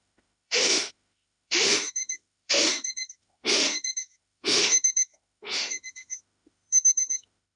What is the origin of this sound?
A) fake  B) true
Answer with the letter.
A